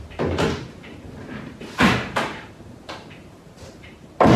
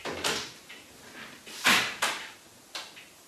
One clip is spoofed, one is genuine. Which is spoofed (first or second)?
first